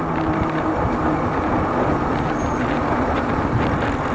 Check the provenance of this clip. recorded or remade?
recorded